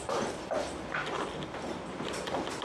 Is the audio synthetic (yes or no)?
yes